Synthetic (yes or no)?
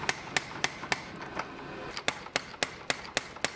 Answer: no